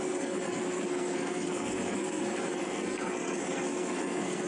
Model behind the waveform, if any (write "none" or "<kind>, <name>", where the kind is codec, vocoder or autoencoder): codec, SNAC